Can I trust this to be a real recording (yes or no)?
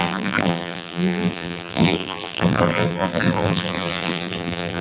no